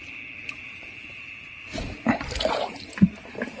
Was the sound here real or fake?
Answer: real